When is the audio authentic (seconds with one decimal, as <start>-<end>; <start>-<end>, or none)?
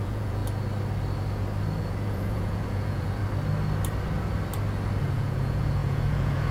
0.4-1.8; 3.2-5.0